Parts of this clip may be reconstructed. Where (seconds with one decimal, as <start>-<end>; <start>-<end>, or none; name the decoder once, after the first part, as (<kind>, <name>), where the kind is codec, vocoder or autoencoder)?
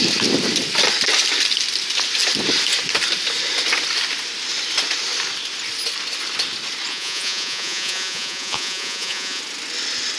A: 6.9-9.4 (vocoder, Vocos)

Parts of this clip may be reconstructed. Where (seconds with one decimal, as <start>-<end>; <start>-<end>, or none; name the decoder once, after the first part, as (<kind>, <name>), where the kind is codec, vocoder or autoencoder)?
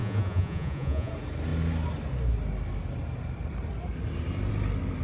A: 0.0-1.1 (vocoder, Vocos)